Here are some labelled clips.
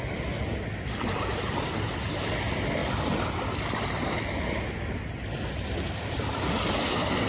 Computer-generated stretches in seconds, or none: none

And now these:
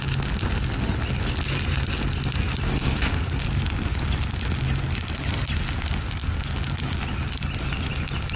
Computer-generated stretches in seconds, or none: 2.8-3.4 (codec, SNAC)

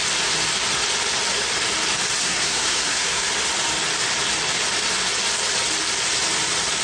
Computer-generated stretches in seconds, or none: 2.2-3.3 (codec, SNAC)